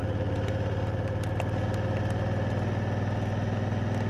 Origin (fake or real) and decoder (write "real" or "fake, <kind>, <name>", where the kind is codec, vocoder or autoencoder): real